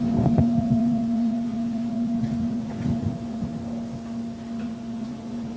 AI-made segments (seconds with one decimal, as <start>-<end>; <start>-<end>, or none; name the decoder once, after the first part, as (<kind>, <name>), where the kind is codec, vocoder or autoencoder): 0.0-3.5 (vocoder, Vocos); 4.6-5.6